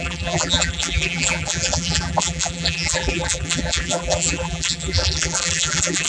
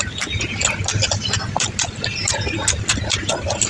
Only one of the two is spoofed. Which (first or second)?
first